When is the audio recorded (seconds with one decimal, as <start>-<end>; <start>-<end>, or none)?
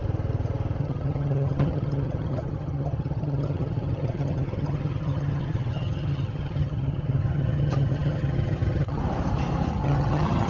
0.0-0.8; 9.0-9.7